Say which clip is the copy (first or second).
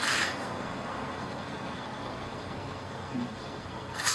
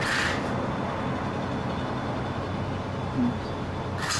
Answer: first